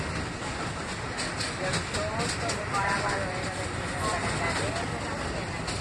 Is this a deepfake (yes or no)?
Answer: no